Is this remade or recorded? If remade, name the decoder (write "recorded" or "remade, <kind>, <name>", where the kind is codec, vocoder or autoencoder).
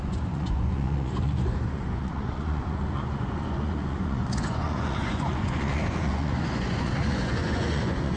remade, vocoder, Vocos